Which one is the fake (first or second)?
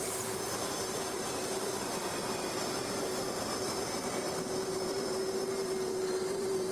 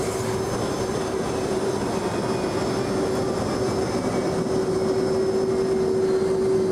first